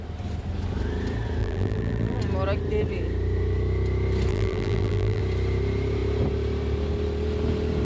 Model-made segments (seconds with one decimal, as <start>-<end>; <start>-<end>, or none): 1.4-2.2; 4.3-5.2